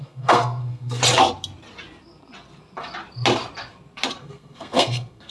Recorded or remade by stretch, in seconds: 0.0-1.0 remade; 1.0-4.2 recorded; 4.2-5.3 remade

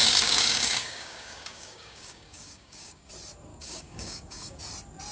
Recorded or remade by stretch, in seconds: 0.0-3.1 remade; 3.1-3.5 recorded; 3.5-4.6 remade; 4.6-5.1 recorded

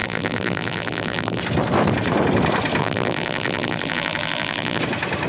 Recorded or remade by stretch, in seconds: 0.0-1.4 remade; 1.4-2.8 recorded; 2.8-4.8 remade; 4.8-5.3 recorded

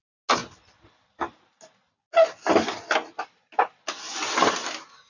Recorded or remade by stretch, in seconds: 0.0-5.1 recorded

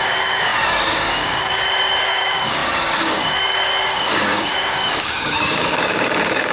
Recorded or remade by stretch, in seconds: 0.0-6.5 remade